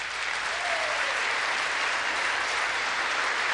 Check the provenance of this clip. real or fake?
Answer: real